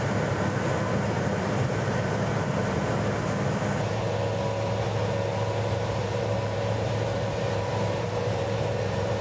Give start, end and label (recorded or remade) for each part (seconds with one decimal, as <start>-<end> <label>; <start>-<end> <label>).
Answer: 0.0-2.8 remade; 2.8-5.8 recorded; 5.8-9.2 remade